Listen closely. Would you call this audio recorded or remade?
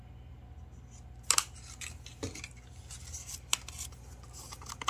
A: recorded